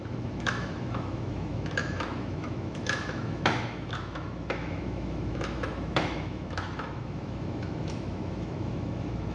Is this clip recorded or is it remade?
remade